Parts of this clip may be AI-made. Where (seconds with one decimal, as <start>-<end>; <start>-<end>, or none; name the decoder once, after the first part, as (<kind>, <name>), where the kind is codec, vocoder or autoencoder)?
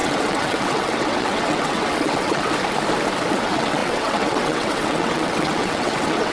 0.0-2.5 (vocoder, WaveNeXt); 3.3-6.3